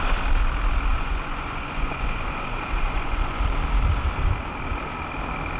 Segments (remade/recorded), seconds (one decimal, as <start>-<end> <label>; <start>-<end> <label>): 0.0-0.9 recorded; 0.9-3.4 remade; 3.4-5.6 recorded